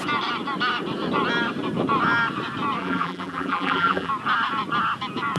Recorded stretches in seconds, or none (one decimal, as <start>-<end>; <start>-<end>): 0.0-2.8; 4.1-5.4